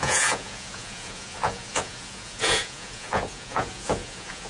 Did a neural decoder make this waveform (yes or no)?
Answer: yes